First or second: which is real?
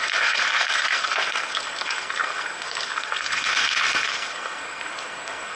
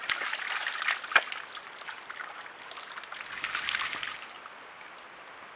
second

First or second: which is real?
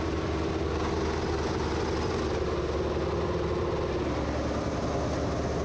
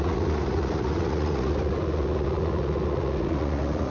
first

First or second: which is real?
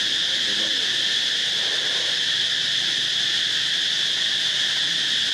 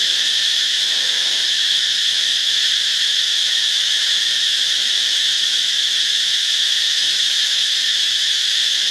first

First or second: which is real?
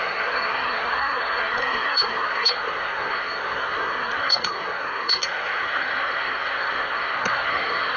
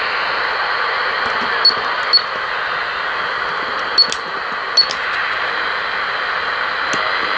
second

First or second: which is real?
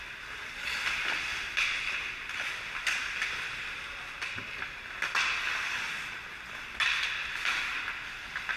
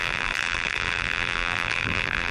first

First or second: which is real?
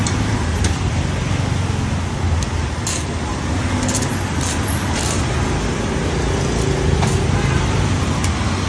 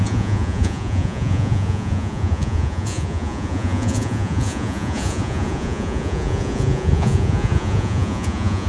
first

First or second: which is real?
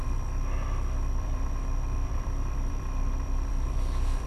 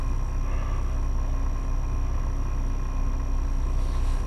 second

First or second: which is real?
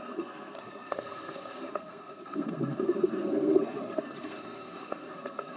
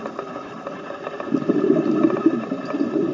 second